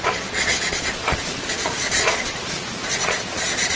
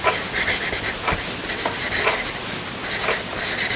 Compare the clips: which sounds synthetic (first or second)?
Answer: first